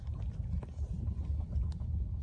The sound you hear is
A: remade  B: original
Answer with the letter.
B